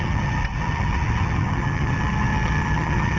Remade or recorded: remade